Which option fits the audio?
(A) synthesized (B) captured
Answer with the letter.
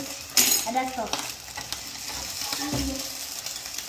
B